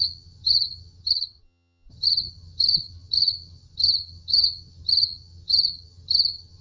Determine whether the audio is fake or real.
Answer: fake